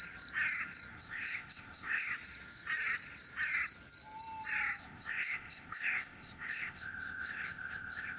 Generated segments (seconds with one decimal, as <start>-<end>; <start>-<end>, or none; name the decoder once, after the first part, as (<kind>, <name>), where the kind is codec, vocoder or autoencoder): 0.9-2.1 (codec, ZipCodec); 4.8-8.2